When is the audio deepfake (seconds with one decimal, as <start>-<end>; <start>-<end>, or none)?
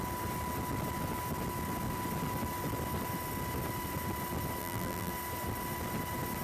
4.6-5.1